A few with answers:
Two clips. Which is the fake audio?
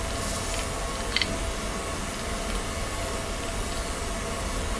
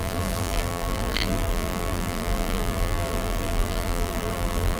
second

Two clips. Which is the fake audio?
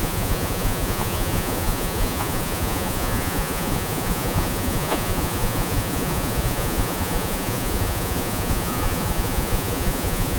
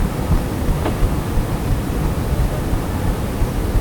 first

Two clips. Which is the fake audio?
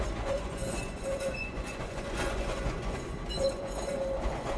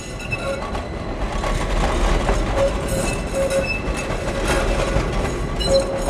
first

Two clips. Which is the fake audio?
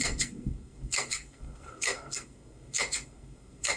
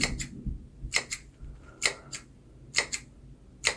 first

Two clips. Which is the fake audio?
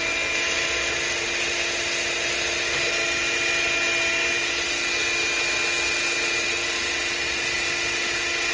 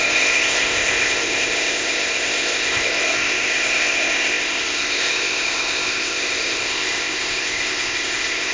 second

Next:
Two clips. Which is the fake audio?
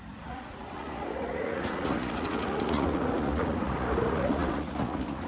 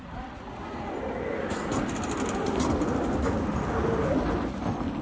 first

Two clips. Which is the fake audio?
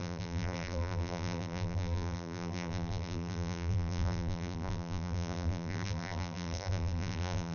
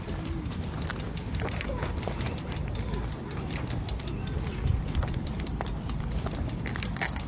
first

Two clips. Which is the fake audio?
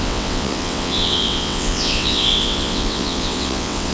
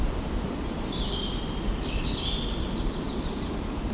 first